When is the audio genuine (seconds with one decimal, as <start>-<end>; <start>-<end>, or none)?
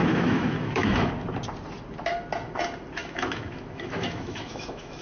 1.1-3.0